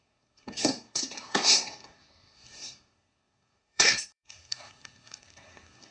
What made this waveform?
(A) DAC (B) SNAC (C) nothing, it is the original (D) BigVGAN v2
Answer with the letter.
B